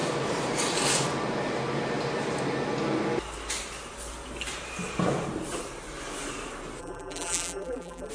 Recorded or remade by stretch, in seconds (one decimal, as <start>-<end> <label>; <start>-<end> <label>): 0.0-6.8 recorded; 6.8-8.1 remade